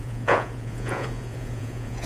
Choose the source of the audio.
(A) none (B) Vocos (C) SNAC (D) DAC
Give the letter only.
B